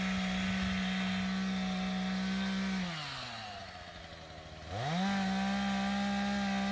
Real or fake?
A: real